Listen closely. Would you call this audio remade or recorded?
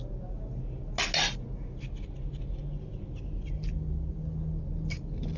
recorded